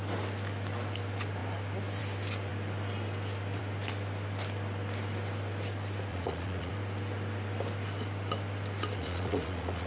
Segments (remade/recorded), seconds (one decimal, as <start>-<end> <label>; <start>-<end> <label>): 0.0-6.1 recorded; 6.1-6.7 remade; 6.7-9.0 recorded; 9.0-9.9 remade